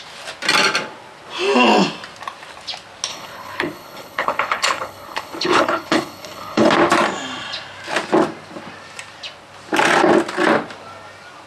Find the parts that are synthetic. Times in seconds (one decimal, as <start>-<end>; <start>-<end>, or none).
3.1-6.7